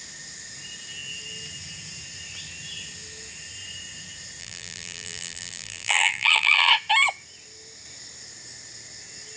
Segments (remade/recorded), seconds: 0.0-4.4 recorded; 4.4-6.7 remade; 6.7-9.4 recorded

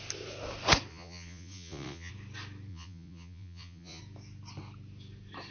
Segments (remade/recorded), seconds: 0.0-0.9 recorded; 0.9-2.1 remade; 2.1-2.7 recorded; 2.7-4.0 remade; 4.0-5.5 recorded

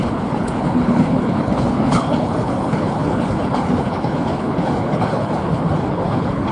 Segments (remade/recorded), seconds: 0.0-6.5 remade